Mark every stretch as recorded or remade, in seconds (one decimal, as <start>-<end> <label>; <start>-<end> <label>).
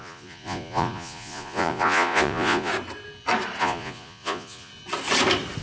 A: 0.0-2.7 remade; 2.7-3.6 recorded; 3.6-4.7 remade; 4.7-5.6 recorded